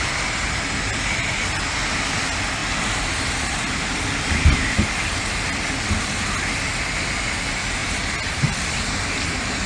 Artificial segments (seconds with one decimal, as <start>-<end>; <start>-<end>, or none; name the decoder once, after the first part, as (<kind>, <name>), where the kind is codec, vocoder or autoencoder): none